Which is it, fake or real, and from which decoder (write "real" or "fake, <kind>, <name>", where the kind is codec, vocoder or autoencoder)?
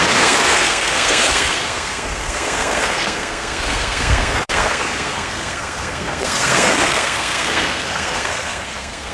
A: fake, codec, SNAC